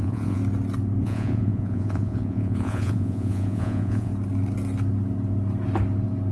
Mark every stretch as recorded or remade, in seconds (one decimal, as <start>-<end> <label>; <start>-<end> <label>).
0.0-0.4 remade; 0.4-1.0 recorded; 1.0-4.1 remade; 4.1-6.3 recorded